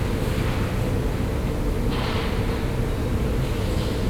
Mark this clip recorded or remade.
recorded